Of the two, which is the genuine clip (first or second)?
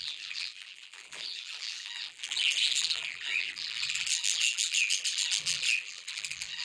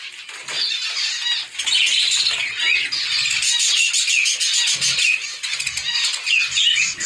second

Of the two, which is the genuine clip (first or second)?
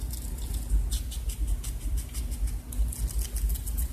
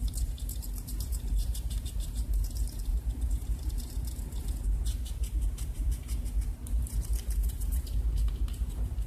first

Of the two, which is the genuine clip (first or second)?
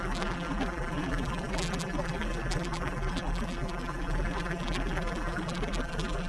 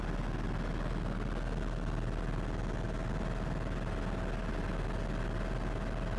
second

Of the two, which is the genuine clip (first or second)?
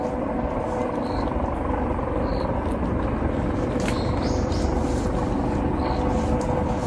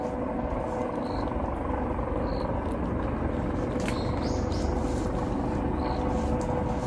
second